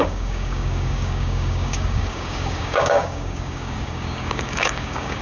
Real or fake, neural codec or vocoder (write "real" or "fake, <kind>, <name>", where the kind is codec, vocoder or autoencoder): fake, codec, DAC